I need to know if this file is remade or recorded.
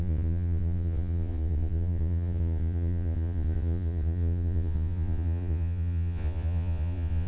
remade